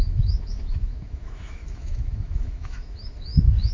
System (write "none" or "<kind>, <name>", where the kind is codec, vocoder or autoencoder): autoencoder, DAC-VAE